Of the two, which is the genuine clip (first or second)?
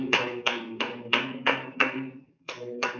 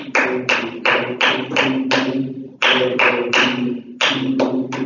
second